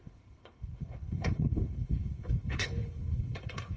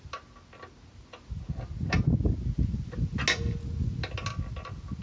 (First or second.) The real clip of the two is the second